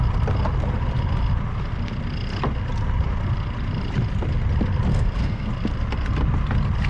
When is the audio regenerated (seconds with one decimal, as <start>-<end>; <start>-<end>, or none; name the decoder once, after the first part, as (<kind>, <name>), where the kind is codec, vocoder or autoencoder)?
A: 4.9-5.5 (codec, SNAC)